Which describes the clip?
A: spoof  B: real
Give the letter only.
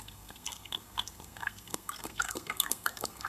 A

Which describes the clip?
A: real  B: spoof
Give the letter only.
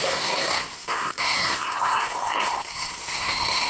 B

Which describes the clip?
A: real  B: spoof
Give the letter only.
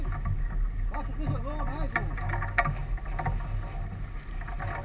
A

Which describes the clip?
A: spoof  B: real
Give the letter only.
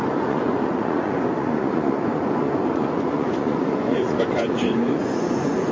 A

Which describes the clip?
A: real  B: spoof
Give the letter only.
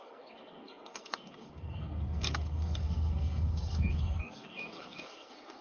B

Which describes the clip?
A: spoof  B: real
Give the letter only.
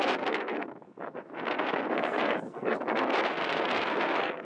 A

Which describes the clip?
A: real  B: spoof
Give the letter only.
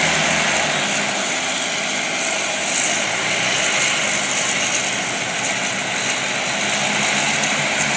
A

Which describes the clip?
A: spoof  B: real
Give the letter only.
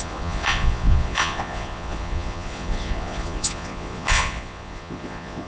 A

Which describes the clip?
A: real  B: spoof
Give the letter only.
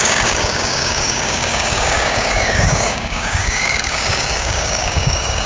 B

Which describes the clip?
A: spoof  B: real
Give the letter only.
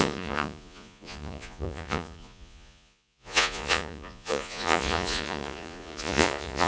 A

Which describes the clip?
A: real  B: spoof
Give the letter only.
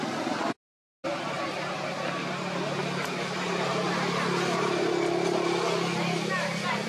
A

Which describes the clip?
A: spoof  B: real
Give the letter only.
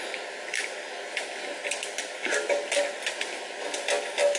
B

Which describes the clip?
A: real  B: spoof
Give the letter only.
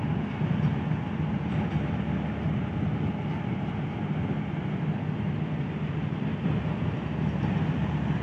A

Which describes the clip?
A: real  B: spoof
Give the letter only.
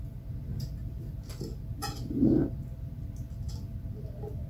A